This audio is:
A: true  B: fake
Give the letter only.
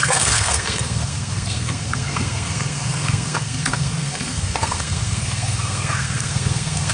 B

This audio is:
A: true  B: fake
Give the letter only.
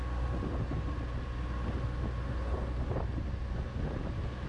A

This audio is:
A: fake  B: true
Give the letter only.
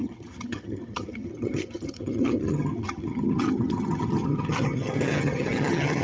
A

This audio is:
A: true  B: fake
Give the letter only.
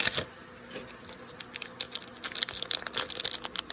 A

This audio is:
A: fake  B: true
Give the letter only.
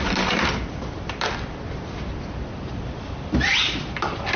B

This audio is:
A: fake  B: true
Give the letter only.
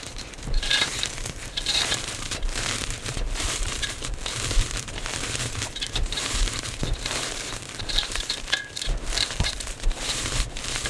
A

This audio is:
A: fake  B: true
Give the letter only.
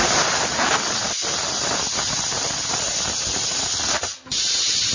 B